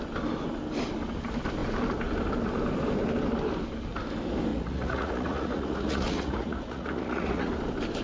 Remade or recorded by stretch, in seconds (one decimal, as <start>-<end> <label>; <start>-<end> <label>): 0.0-4.5 recorded; 4.5-7.5 remade; 7.5-8.0 recorded